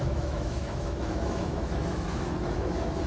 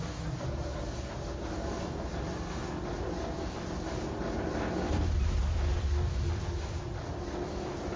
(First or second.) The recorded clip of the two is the second